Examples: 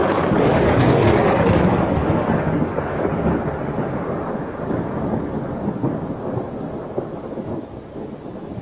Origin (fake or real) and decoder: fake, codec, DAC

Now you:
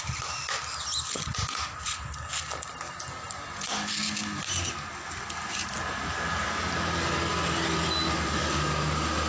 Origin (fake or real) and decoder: real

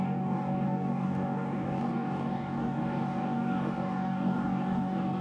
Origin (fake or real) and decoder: fake, codec, DAC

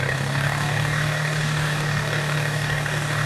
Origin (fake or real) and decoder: fake, codec, DAC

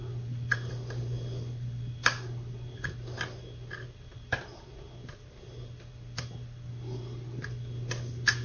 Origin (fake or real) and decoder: real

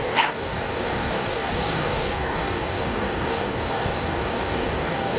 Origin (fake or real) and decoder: fake, codec, DAC